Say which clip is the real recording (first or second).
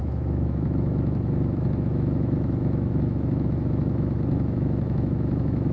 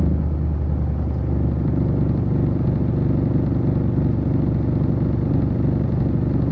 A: second